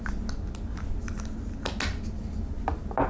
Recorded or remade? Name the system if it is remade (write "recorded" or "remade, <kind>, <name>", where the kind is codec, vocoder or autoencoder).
recorded